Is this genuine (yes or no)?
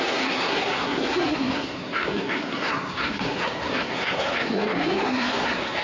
no